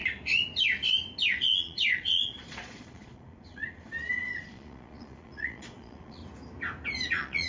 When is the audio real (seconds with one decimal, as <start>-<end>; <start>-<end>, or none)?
0.0-1.3; 6.2-7.1